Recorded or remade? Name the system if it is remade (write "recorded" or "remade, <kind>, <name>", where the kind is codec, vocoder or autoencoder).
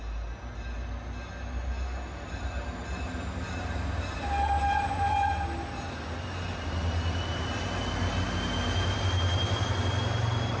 recorded